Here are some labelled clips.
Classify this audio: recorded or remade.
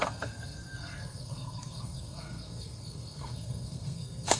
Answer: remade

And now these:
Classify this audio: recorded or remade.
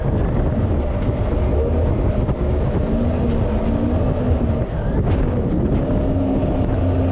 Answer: recorded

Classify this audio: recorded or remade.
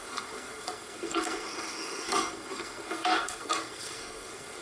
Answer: remade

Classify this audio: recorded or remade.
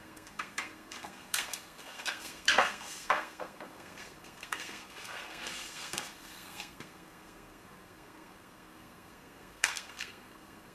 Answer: remade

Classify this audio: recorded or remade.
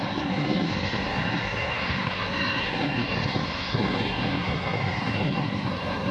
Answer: remade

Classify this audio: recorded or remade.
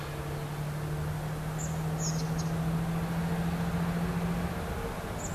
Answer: recorded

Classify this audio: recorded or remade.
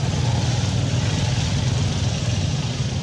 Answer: recorded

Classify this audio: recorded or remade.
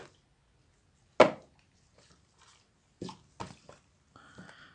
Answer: recorded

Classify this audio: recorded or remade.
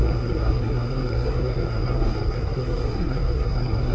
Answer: remade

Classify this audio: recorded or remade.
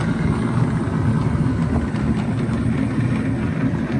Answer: recorded